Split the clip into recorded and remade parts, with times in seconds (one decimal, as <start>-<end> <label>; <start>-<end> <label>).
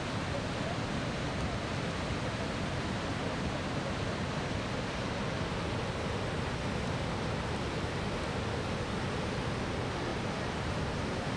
0.0-10.1 recorded; 10.1-10.7 remade; 10.7-11.4 recorded